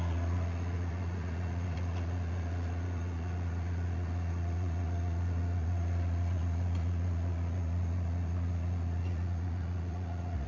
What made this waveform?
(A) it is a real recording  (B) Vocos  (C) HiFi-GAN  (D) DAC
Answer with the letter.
B